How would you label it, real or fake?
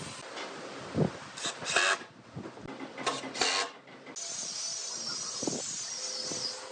real